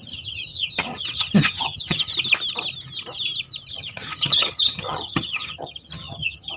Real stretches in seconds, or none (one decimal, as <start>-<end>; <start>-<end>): 2.1-3.7